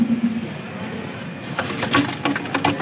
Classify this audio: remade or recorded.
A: recorded